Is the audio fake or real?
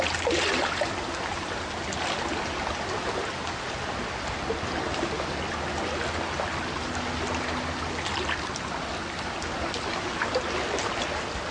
real